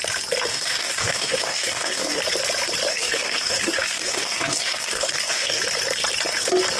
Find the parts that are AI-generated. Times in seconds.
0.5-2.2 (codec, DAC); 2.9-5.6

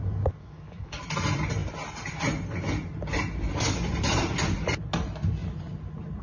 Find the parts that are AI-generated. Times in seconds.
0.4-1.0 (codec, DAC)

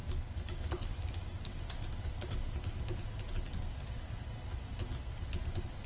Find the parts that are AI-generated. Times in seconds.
0.0-1.6 (codec, DAC)

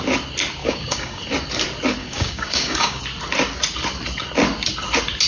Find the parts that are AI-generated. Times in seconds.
0.6-1.2 (codec, DAC); 2.0-3.0

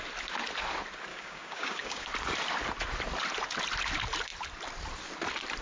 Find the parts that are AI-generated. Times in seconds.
1.1-2.1 (codec, DAC)

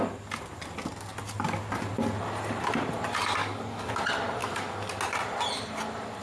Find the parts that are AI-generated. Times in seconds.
3.4-3.9 (codec, DAC); 4.4-4.9